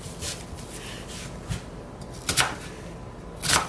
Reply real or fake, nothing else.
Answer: real